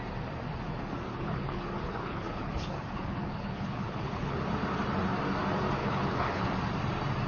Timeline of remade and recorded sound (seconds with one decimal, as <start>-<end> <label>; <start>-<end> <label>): 0.0-1.1 recorded; 1.1-4.4 remade; 4.4-5.8 recorded; 5.8-6.5 remade; 6.5-7.3 recorded